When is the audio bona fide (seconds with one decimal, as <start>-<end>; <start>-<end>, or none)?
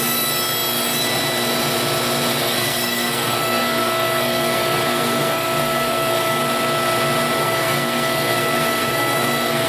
0.0-2.3; 6.4-7.4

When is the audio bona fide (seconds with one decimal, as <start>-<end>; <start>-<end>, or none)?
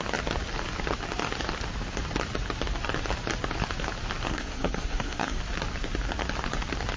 0.0-4.3; 5.4-7.0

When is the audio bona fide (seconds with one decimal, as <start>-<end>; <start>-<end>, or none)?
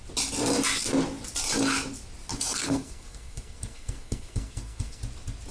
0.0-2.3; 5.0-5.5